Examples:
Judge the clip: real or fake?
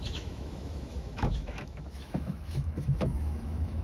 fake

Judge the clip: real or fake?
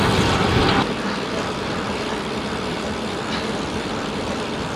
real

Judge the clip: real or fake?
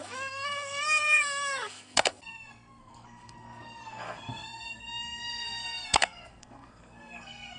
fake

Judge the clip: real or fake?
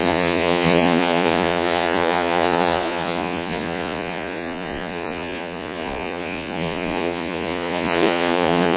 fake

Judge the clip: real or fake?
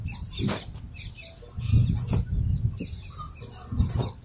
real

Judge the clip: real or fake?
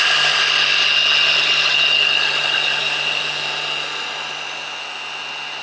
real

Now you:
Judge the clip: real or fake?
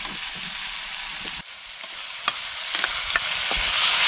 real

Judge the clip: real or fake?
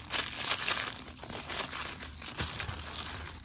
real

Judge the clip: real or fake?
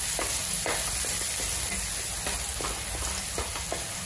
real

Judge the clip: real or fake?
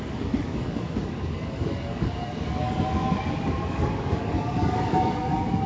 fake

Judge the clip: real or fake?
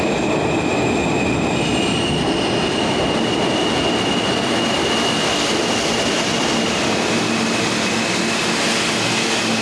real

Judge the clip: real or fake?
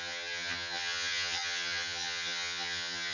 fake